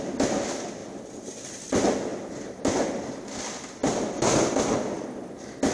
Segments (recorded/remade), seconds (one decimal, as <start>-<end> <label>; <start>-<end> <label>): 0.0-5.7 recorded